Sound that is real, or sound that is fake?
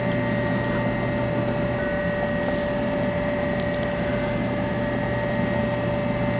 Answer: real